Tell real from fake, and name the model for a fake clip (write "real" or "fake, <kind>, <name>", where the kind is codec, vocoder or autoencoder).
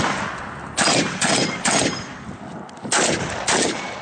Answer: real